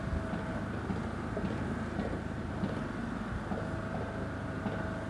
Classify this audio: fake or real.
real